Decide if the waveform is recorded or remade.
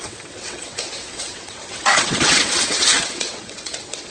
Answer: remade